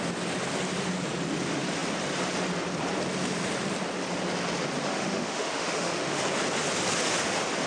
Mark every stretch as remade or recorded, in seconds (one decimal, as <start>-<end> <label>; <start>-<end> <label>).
0.0-4.8 recorded; 4.8-6.2 remade; 6.2-7.7 recorded